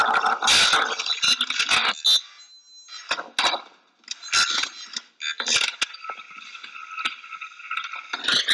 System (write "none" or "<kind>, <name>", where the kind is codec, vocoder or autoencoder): none